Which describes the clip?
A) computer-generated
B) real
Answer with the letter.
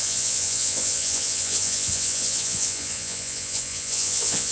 A